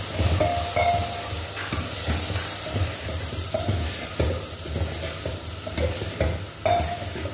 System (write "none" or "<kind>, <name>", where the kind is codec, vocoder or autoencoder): none